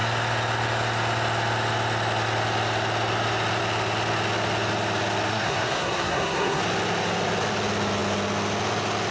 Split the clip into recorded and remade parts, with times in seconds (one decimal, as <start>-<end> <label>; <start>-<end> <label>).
0.0-5.3 recorded; 5.3-6.6 remade; 6.6-9.1 recorded